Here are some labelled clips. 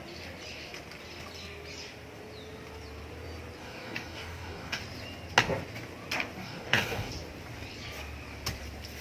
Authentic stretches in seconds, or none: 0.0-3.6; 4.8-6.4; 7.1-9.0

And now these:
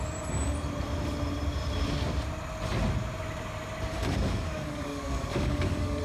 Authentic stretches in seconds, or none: 0.0-3.9

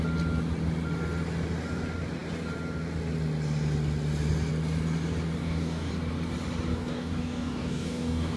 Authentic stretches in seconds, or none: 0.0-5.4; 5.9-6.7

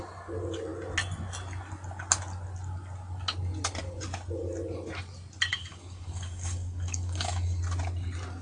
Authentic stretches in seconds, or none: 0.0-5.5; 7.6-8.4

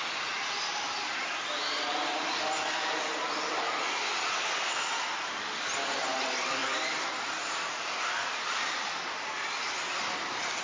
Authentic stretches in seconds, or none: 0.0-10.6

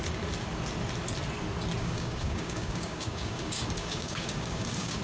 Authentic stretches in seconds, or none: 0.0-1.8

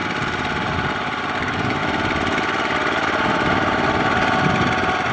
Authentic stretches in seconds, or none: 0.0-1.4; 1.8-5.1